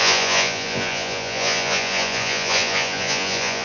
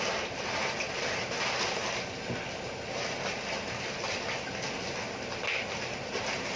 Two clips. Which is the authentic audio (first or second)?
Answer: second